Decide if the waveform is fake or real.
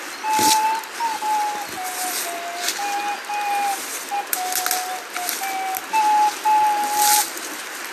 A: real